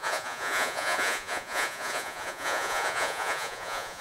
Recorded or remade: remade